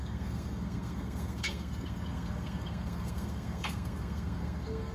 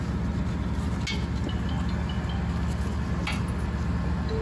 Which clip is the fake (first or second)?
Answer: first